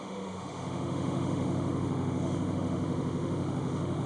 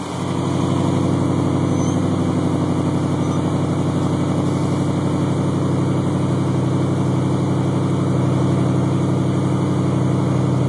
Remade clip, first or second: first